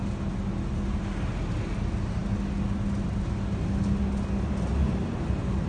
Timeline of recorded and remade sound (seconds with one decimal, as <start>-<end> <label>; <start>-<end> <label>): 0.0-5.7 recorded